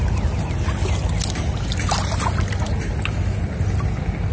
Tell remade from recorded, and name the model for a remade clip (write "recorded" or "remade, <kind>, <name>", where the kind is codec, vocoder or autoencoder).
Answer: recorded